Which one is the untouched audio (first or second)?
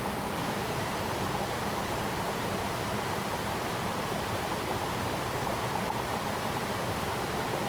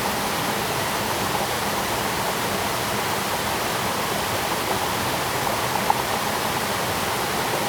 second